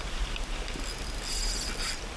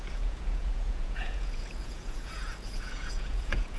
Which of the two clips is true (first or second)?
first